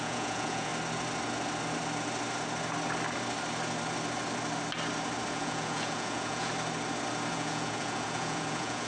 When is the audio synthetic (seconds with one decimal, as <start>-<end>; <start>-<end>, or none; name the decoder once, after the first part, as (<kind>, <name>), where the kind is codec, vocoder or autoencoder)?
0.0-0.7 (vocoder, Vocos); 5.3-6.5; 7.3-8.9